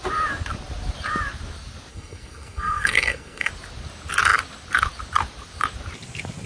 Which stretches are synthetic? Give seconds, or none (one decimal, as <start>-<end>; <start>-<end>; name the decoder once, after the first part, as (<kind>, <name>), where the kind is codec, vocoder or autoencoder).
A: 1.9-3.5 (codec, SNAC)